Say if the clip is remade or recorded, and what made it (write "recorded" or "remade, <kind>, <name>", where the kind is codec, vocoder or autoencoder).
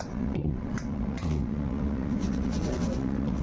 remade, vocoder, WaveNeXt